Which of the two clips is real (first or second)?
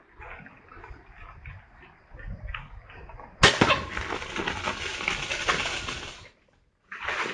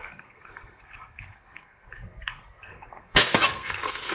first